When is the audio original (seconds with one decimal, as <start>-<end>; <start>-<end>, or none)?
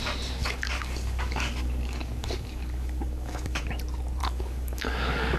0.0-0.4; 3.6-4.2